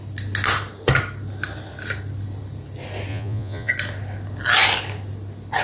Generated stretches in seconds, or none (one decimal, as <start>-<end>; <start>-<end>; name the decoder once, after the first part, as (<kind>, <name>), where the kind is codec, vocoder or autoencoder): 3.1-3.7 (vocoder, Vocos)